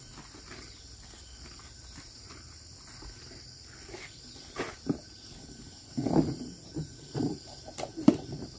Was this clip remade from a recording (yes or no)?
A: no